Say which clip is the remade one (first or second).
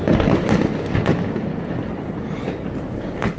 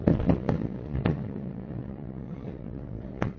second